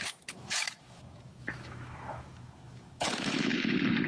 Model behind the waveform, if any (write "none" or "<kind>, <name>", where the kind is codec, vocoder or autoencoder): autoencoder, DAC-VAE